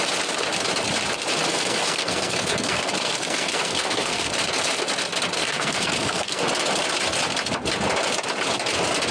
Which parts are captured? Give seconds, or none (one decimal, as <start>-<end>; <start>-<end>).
0.0-1.5; 4.3-5.4; 6.4-9.1